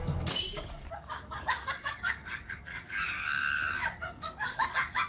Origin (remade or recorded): remade